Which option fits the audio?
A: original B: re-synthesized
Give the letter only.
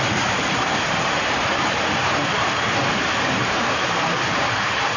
B